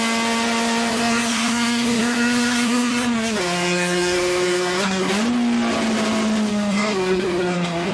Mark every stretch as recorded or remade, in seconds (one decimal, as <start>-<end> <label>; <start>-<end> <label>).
0.0-0.9 recorded; 0.9-5.1 remade; 5.1-6.5 recorded; 6.5-7.9 remade

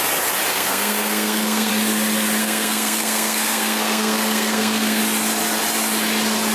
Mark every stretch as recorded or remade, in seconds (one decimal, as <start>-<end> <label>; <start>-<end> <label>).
0.0-0.5 recorded; 0.5-1.7 remade; 1.7-2.4 recorded; 2.4-5.0 remade; 5.0-6.5 recorded